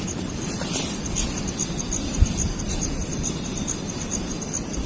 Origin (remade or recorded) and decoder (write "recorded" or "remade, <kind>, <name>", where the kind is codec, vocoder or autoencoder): recorded